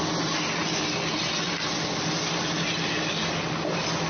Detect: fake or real real